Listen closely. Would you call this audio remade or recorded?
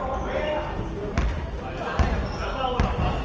recorded